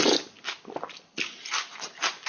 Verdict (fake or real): real